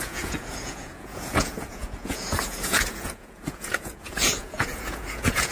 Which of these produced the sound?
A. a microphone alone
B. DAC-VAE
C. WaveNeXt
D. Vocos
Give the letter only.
D